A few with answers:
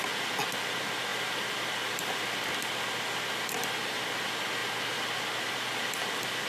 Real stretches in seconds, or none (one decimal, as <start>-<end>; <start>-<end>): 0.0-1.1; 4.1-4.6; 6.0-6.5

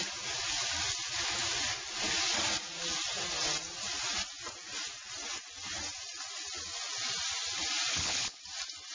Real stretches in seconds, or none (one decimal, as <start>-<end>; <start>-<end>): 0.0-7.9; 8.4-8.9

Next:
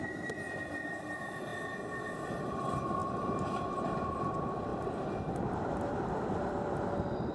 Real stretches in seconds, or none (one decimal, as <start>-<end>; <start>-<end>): 1.5-2.4; 3.0-4.1

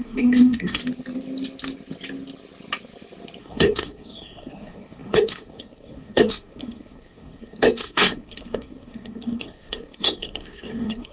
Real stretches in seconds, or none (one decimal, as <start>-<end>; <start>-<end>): 0.8-3.4

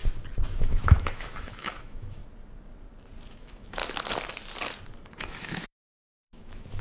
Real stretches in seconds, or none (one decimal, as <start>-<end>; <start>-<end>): 0.0-0.6; 2.2-3.3; 3.8-5.2

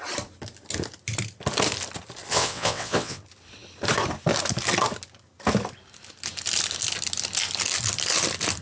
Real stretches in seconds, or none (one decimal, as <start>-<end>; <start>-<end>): 0.0-2.3; 3.2-8.6